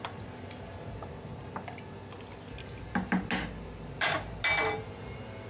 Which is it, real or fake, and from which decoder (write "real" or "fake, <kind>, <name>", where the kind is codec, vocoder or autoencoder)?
real